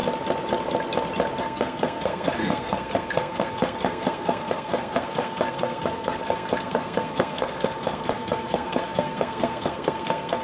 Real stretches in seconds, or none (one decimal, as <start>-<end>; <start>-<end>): 0.0-1.4